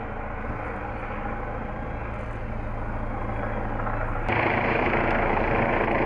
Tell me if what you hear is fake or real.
real